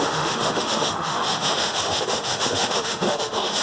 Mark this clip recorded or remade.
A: remade